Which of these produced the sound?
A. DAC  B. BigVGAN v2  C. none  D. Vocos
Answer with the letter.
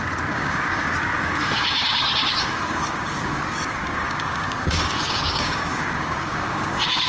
A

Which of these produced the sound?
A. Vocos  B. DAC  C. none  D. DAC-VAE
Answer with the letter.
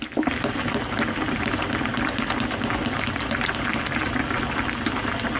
C